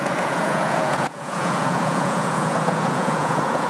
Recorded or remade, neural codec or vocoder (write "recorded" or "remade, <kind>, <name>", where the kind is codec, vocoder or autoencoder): remade, vocoder, Vocos